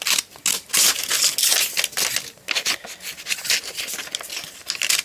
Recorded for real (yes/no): yes